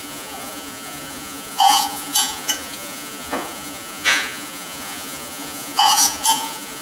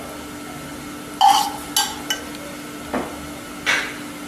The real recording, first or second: second